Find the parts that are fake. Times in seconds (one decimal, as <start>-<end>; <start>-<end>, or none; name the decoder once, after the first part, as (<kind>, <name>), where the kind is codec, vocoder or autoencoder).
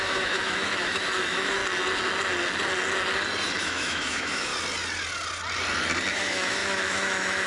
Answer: 0.0-1.6 (autoencoder, DAC-VAE); 3.6-4.5; 6.1-7.5